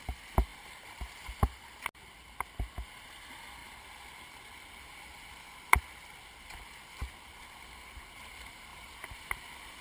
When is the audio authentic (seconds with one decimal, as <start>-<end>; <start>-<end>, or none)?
0.0-9.8